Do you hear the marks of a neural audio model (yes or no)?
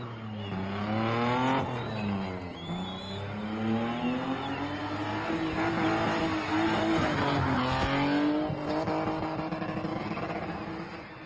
no